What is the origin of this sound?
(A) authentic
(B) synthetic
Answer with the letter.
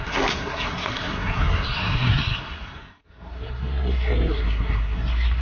B